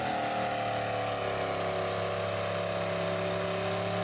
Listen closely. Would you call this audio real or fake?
real